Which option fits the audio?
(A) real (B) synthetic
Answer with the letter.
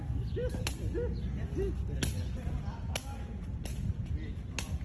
A